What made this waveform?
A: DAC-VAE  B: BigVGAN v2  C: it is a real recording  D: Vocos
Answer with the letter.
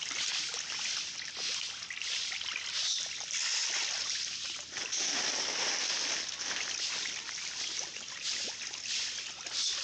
C